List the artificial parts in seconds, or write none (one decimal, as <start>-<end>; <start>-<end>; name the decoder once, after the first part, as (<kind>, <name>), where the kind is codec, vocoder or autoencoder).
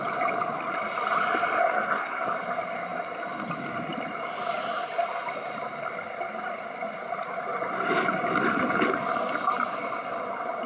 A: 1.6-2.3 (codec, SNAC)